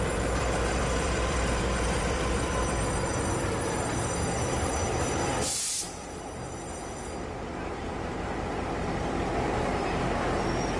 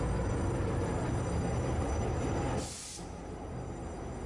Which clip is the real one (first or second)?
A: second